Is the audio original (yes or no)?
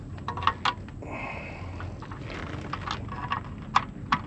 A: yes